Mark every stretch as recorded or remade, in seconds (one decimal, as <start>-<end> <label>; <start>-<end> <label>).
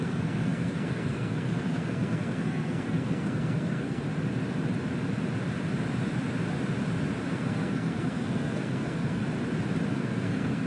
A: 0.0-4.0 remade; 4.0-7.3 recorded; 7.3-9.2 remade; 9.2-9.9 recorded; 9.9-10.7 remade